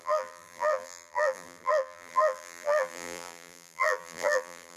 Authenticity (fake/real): fake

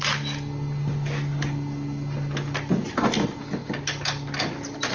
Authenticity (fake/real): real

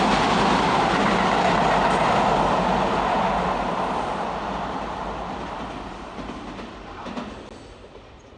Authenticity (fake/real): real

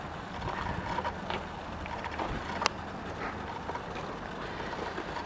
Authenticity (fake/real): real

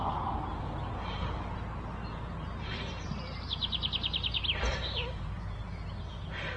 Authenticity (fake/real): real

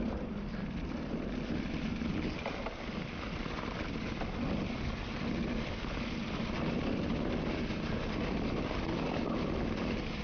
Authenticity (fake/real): real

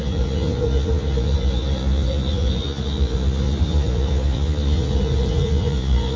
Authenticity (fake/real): fake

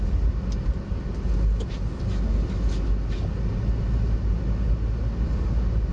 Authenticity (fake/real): real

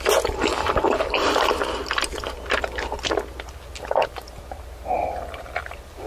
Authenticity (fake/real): real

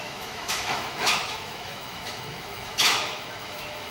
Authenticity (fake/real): fake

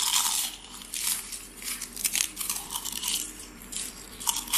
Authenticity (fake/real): fake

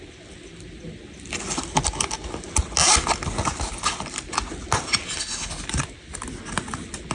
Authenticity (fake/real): real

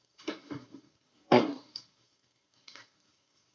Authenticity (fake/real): fake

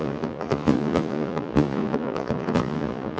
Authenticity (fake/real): fake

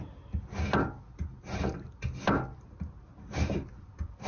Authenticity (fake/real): real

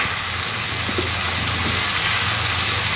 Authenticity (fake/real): real